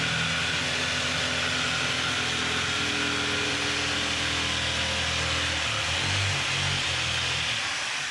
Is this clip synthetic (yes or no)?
no